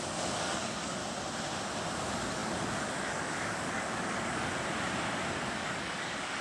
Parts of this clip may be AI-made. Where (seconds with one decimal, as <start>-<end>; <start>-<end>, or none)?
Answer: 0.0-1.0; 1.9-4.5; 5.3-6.4